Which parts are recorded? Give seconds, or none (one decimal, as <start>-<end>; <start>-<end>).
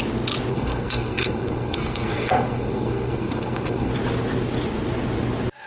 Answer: 0.0-0.5; 3.9-5.7